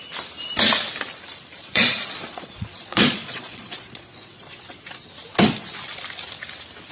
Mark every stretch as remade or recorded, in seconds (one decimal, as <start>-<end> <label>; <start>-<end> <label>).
0.0-1.6 recorded; 1.6-5.1 remade; 5.1-6.9 recorded